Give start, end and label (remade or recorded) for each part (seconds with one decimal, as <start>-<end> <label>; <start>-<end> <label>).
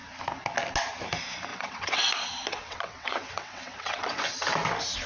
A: 0.0-1.5 recorded; 1.5-2.1 remade; 2.1-2.5 recorded; 2.5-4.2 remade; 4.2-5.1 recorded